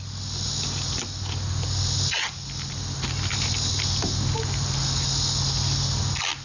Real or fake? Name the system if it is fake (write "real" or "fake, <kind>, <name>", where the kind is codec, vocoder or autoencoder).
real